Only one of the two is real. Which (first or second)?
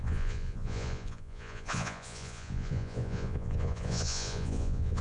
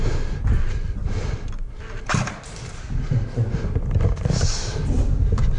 second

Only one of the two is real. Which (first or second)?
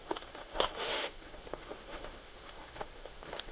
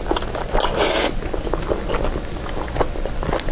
second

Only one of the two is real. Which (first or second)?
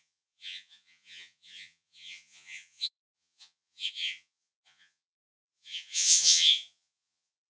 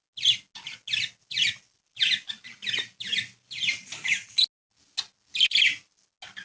second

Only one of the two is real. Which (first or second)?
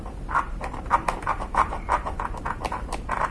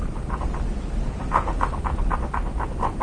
second